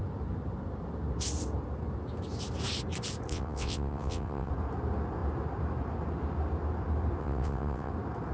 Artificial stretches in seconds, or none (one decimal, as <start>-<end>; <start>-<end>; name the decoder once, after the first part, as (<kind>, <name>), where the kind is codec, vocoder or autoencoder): 3.3-4.5 (vocoder, WaveNeXt); 7.2-7.9